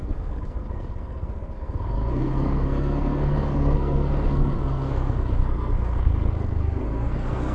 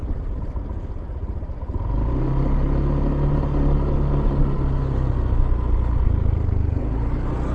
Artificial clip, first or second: first